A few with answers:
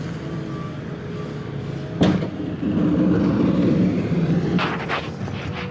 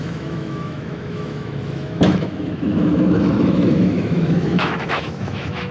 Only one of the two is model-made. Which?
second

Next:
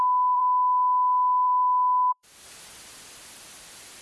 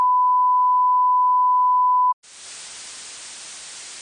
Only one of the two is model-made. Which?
first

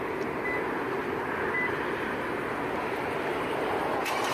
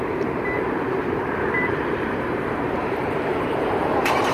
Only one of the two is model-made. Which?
second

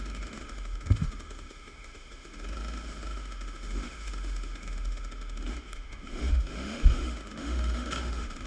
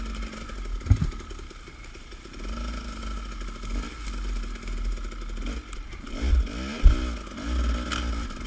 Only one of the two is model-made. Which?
first